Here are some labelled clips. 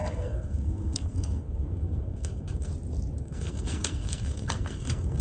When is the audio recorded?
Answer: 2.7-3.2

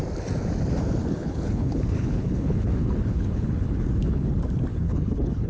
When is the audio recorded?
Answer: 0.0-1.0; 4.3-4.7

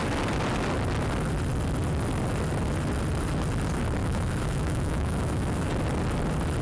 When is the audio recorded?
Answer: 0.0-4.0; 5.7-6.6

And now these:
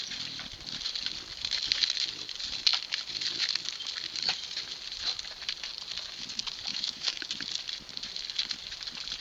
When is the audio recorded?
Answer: 0.0-6.7; 7.3-9.2

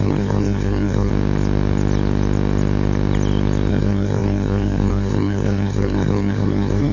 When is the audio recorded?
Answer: 1.1-3.7